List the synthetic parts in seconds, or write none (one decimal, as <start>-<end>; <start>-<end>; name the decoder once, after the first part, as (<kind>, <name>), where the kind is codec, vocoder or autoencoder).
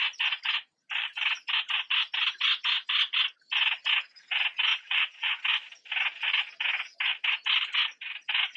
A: 4.7-5.3 (vocoder, WaveNeXt)